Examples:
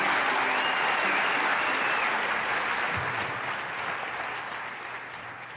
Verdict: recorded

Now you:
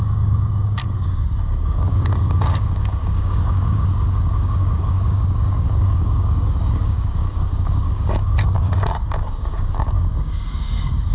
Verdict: remade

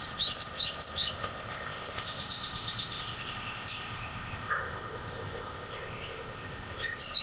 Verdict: remade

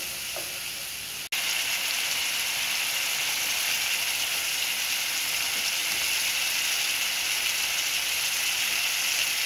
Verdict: recorded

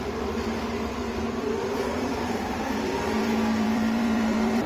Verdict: remade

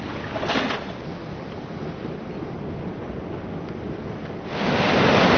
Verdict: recorded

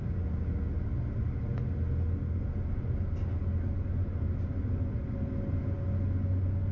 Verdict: recorded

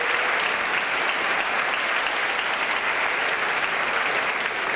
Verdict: recorded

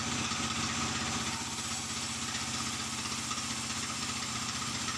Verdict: recorded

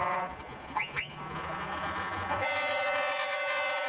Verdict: remade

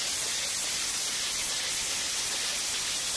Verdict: recorded